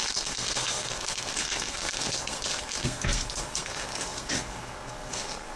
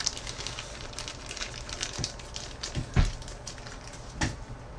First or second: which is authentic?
second